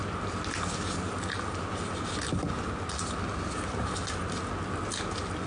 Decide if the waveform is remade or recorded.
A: recorded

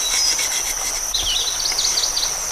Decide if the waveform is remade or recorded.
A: recorded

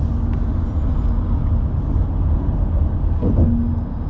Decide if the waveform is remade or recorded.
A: recorded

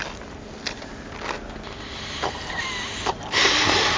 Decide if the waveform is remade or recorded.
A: recorded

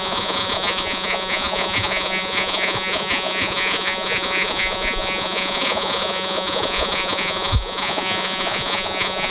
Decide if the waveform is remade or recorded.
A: remade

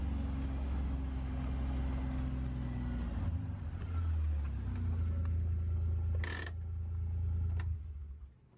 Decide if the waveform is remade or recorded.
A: recorded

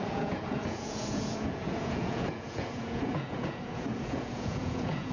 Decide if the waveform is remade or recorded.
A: remade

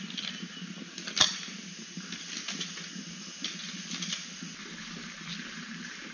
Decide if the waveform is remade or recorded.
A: recorded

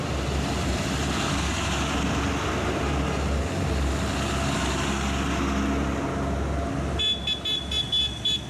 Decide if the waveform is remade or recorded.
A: recorded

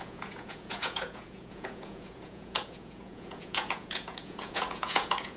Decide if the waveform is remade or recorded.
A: remade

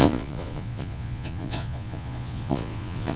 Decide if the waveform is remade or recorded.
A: remade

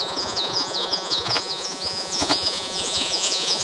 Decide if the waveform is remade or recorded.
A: remade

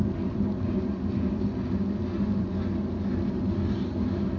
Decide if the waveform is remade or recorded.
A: recorded